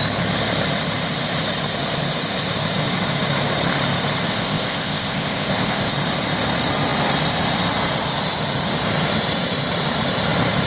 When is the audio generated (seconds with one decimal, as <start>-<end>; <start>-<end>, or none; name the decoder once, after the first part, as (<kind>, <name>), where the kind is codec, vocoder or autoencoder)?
4.3-5.9 (codec, ZipCodec)